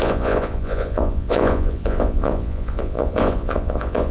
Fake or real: fake